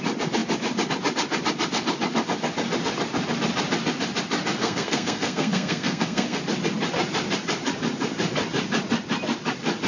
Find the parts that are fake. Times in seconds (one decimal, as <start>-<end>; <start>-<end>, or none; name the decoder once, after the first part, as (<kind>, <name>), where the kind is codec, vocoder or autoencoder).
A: 4.6-6.4 (codec, SNAC)